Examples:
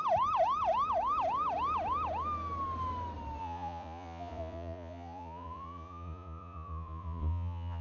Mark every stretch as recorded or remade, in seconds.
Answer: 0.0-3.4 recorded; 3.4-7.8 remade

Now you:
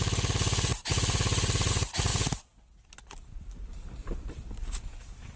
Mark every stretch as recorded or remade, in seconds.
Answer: 0.0-5.4 recorded